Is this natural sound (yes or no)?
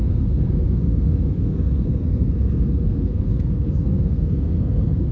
no